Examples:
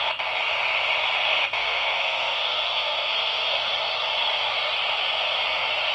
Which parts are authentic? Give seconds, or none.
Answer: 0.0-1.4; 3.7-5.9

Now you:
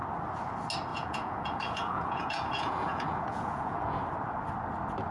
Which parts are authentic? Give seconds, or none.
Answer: 0.0-0.9; 4.0-5.1

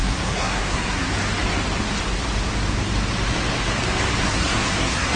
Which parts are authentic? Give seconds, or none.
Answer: 1.1-4.2

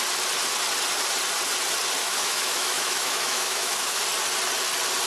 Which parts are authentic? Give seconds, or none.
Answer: 0.0-2.0; 4.0-5.1

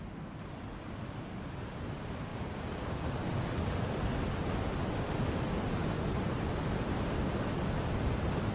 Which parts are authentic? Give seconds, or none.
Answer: 0.0-8.5

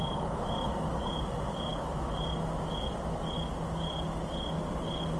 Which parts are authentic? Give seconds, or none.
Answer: 0.0-5.2